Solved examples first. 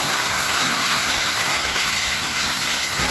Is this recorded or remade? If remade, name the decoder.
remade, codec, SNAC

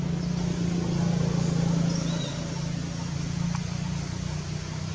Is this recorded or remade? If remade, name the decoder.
recorded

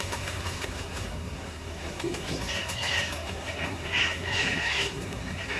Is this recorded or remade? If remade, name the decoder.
remade, codec, SNAC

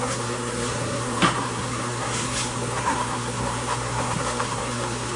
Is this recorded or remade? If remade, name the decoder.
remade, codec, SNAC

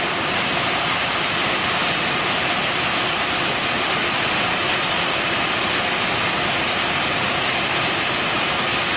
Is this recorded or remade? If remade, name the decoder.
recorded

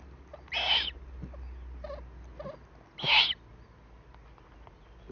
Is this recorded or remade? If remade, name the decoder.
recorded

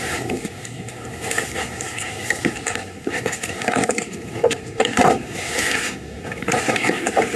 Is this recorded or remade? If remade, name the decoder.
remade, codec, SNAC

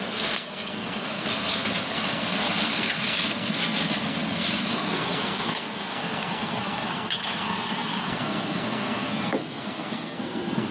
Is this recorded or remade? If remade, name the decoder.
remade, codec, SNAC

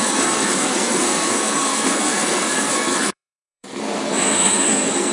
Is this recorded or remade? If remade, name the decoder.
remade, codec, SNAC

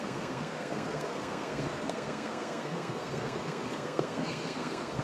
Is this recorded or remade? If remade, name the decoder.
remade, codec, SNAC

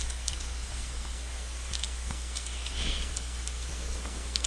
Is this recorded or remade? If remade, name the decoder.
remade, codec, SNAC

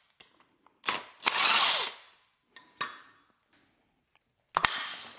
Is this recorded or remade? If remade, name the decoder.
recorded